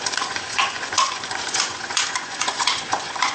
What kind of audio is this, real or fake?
fake